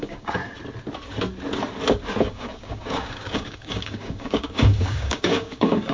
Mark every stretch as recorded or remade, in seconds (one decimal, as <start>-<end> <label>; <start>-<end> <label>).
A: 0.0-0.4 remade; 0.4-2.2 recorded; 2.2-5.9 remade